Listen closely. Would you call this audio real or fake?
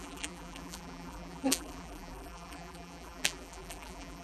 fake